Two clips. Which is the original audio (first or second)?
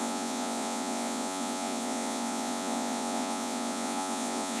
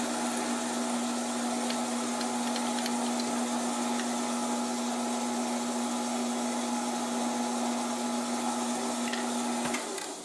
second